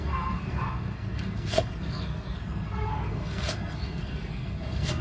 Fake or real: fake